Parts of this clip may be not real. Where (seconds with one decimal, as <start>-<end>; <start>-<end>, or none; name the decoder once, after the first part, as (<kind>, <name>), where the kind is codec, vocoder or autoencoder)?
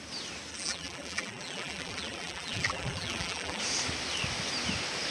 0.5-3.6 (vocoder, BigVGAN v2)